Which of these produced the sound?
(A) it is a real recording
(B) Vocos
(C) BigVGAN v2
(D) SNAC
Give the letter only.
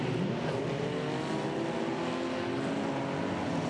A